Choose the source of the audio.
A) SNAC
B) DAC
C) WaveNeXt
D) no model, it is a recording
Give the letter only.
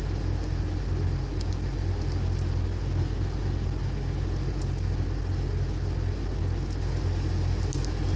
D